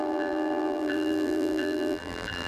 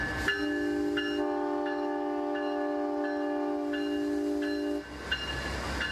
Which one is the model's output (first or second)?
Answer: first